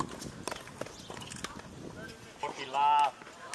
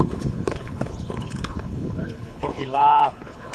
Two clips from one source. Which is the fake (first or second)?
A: second